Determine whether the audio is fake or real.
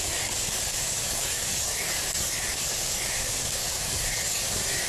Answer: fake